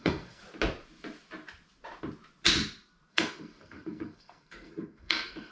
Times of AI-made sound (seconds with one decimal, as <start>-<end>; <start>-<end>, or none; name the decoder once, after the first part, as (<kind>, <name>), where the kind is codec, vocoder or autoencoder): 0.0-0.4 (codec, SNAC); 3.1-5.5